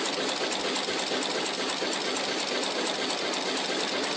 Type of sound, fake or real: real